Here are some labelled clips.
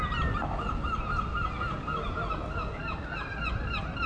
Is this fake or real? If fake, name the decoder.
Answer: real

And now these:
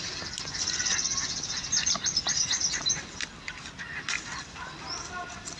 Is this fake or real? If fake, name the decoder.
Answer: real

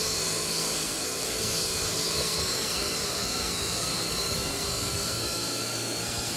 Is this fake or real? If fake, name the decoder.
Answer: fake, codec, SNAC